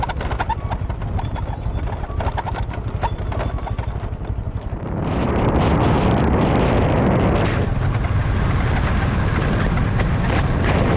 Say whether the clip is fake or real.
real